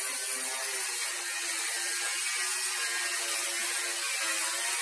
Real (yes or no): yes